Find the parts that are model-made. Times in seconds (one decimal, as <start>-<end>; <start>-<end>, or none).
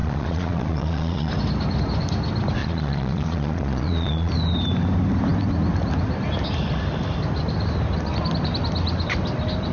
0.0-1.3; 2.6-4.3